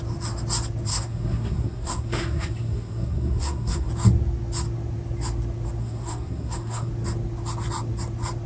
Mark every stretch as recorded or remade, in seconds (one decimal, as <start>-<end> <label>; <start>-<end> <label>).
0.0-0.9 recorded; 0.9-3.9 remade; 3.9-5.8 recorded; 5.8-6.9 remade; 6.9-8.5 recorded